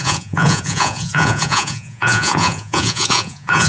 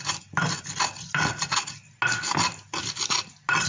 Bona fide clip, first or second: second